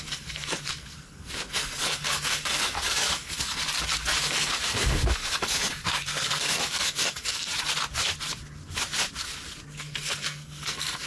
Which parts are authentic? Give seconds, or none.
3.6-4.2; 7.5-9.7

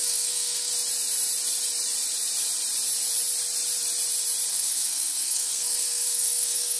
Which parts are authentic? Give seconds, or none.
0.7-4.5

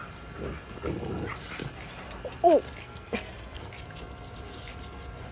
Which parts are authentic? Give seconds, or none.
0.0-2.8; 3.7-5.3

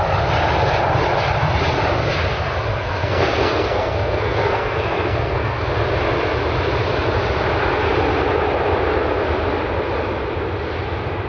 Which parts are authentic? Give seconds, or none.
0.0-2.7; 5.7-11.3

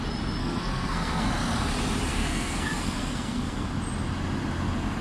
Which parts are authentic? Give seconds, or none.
0.0-0.4; 1.3-2.1; 3.7-5.0

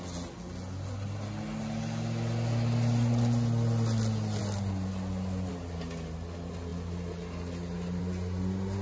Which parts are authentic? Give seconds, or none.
0.0-8.8

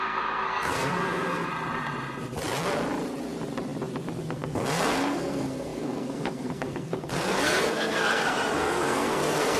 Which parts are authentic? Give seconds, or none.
1.5-4.2

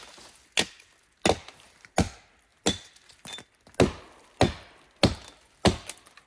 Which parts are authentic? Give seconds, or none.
0.0-6.3